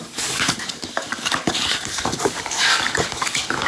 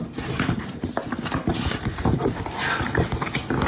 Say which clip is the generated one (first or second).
first